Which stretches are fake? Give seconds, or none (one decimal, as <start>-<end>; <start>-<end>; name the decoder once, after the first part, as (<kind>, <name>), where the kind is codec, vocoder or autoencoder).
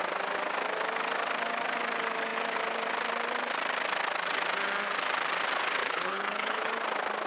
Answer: 5.8-6.7 (codec, HILCodec)